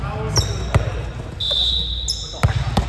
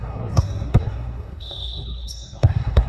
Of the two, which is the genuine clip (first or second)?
first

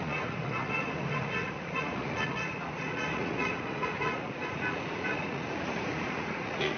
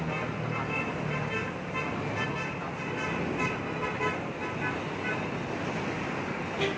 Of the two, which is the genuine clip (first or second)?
second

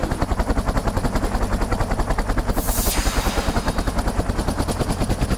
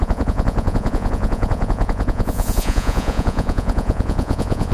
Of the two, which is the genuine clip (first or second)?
first